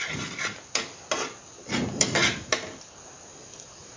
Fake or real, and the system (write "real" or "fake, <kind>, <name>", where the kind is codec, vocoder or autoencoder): real